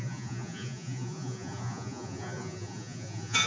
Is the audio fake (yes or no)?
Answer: yes